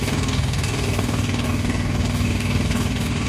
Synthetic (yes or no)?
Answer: yes